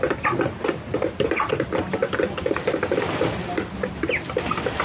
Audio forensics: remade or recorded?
remade